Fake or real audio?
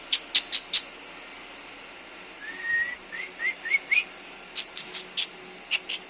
real